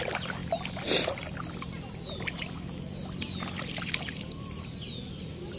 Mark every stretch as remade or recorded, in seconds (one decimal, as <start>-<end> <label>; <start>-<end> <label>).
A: 0.0-5.6 recorded